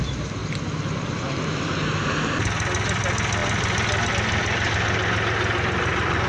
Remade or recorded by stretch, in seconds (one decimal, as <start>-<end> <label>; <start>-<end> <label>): 0.0-6.3 recorded